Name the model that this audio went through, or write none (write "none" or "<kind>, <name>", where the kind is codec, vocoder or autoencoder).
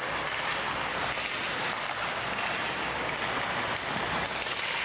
none